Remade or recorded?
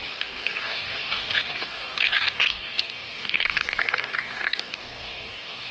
remade